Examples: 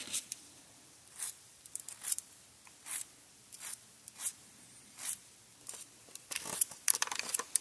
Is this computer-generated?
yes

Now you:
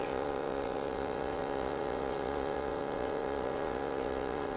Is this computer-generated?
yes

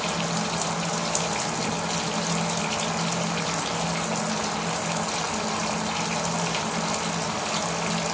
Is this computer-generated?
no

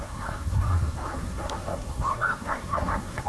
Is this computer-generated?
yes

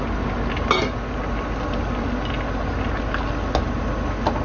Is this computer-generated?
no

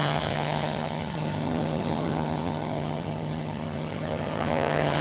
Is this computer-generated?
yes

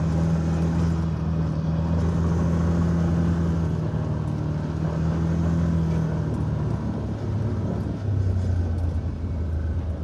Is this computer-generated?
no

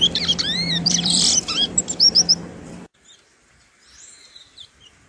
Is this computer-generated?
yes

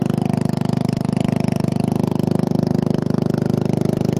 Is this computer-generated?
no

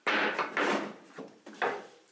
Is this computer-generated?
no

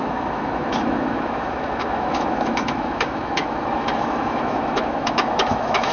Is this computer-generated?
yes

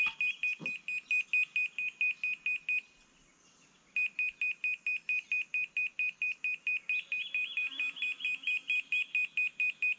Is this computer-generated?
no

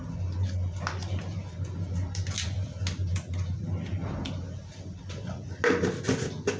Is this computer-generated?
no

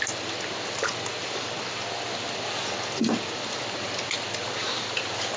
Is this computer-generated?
no